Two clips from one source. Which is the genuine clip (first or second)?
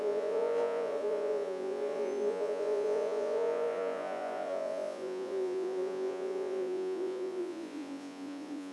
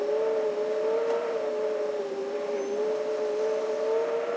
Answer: second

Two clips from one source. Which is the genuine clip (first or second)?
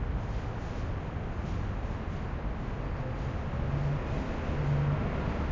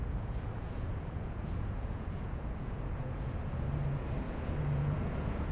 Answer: first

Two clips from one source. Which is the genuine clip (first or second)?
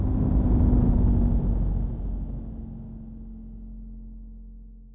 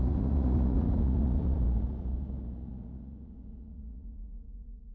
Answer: first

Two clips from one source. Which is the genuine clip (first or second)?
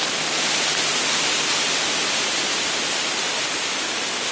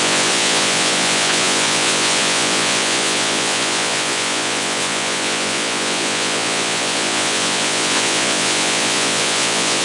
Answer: first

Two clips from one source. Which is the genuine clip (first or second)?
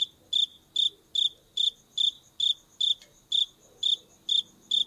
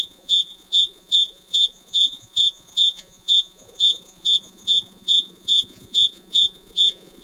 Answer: first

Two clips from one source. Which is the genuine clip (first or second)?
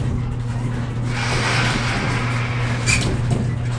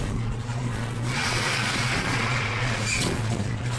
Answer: first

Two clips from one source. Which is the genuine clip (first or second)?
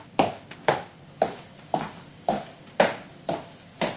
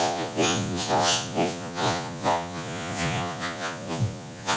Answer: first